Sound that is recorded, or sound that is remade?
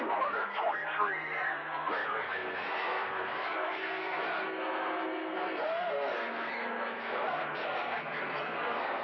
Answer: remade